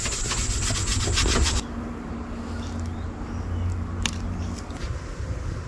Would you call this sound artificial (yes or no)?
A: no